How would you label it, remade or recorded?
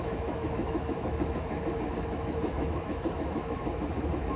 remade